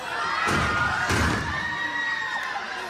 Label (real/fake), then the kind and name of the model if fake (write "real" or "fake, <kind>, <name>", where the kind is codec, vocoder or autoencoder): real